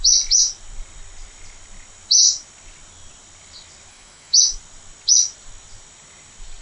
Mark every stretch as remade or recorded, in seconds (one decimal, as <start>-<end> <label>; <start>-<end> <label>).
0.0-3.9 recorded; 3.9-4.4 remade; 4.4-6.6 recorded